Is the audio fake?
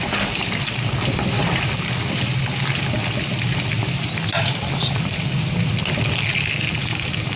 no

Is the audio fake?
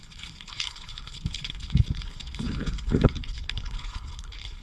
yes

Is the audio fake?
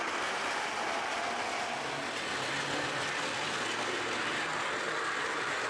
no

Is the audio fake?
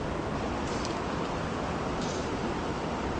no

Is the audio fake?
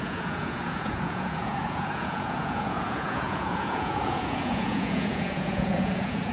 yes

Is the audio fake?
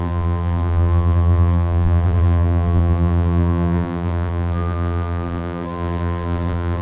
yes